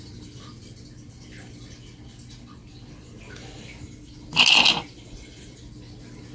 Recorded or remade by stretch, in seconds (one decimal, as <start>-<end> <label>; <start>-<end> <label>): 0.0-6.3 recorded